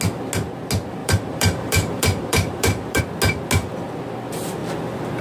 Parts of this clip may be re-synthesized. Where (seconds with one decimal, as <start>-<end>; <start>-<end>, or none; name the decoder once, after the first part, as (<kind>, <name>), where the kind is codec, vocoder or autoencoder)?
1.0-3.0 (vocoder, BigVGAN v2)